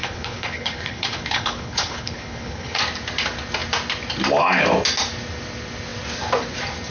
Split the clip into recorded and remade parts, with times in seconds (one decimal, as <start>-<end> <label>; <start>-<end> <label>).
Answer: 0.0-2.8 remade; 2.8-6.9 recorded